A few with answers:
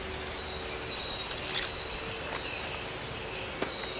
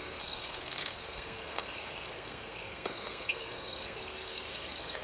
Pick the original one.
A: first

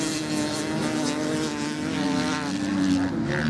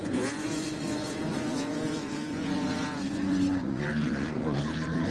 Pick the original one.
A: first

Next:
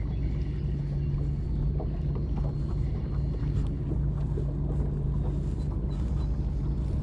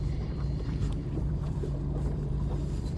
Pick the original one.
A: first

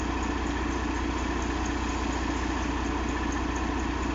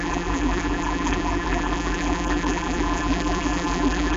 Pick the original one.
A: first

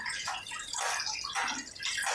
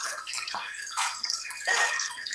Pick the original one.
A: first